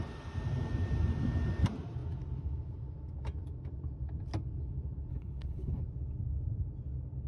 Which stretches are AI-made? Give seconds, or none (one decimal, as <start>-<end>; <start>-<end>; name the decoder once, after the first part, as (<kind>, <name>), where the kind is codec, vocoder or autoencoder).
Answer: 5.1-5.8 (codec, HILCodec)